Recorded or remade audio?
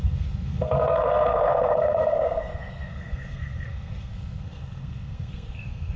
remade